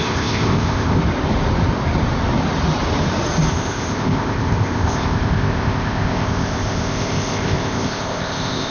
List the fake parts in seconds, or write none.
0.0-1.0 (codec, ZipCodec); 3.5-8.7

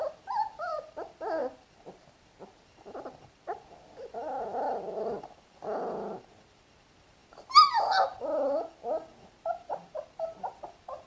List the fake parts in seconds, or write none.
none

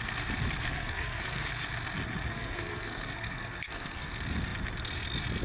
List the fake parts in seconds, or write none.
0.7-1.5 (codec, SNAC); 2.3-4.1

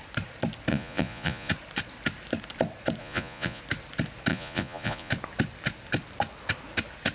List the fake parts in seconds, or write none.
0.7-1.5 (vocoder, Vocos); 3.0-3.6; 4.3-5.1

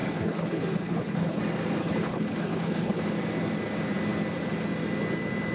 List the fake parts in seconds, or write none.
0.0-1.4 (codec, HILCodec); 1.8-3.0

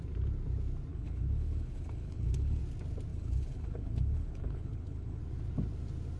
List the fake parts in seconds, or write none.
0.9-2.6 (codec, HILCodec); 3.1-5.2